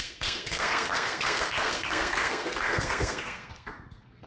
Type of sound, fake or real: fake